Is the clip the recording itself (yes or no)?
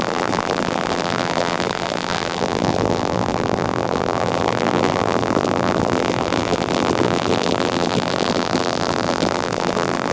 no